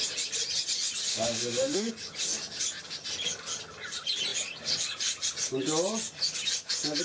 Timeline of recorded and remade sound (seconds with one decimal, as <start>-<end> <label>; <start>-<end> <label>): 0.0-1.1 recorded; 1.1-1.9 remade; 1.9-7.0 recorded